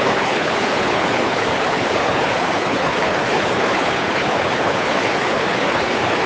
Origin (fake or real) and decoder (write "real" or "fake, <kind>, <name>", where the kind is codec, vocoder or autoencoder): fake, codec, HILCodec